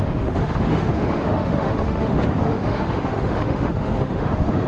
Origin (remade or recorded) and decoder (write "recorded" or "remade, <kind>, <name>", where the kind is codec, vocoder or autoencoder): remade, autoencoder, DAC-VAE